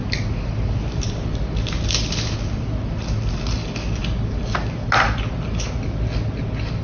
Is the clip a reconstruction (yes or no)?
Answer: no